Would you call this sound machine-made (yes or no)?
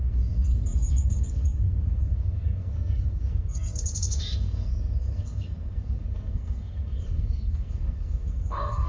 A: yes